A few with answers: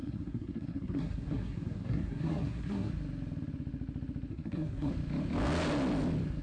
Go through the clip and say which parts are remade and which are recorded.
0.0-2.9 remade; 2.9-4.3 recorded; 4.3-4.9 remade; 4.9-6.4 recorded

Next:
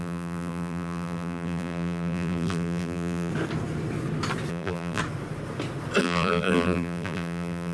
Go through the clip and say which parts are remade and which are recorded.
0.0-3.3 remade; 3.3-4.5 recorded; 4.5-5.0 remade; 5.0-6.0 recorded; 6.0-7.7 remade

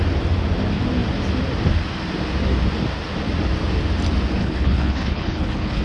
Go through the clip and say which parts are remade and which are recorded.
0.0-4.4 recorded; 4.4-5.8 remade

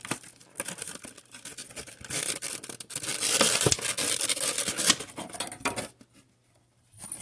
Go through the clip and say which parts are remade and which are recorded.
0.0-7.2 remade